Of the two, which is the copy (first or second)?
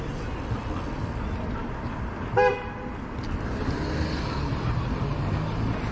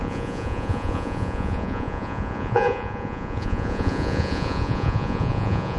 second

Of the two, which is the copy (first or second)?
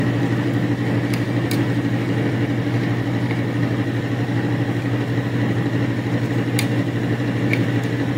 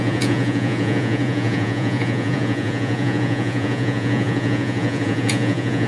second